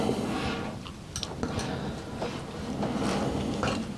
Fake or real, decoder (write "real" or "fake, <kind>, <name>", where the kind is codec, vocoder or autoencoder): real